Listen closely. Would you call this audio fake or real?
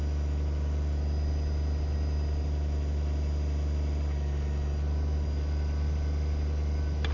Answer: real